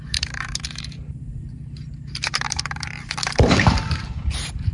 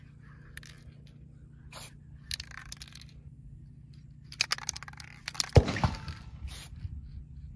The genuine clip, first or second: second